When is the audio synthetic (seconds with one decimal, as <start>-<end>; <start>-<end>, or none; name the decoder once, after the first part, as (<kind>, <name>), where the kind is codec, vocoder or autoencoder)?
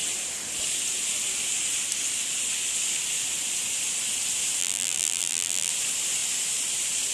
4.6-5.7 (vocoder, BigVGAN v2)